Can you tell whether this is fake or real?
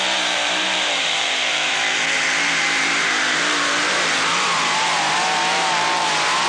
fake